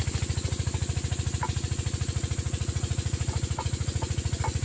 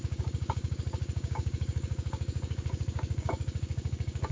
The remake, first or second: second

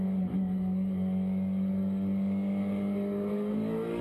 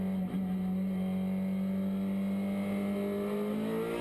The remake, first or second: first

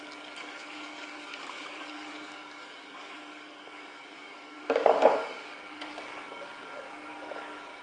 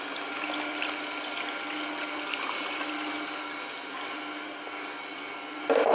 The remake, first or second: first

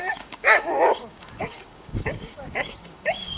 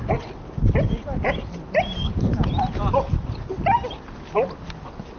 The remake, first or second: first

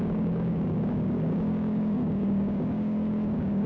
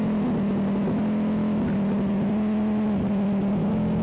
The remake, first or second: first